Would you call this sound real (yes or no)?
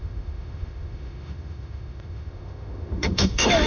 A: no